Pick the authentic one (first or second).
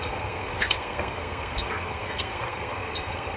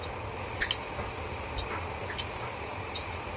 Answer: second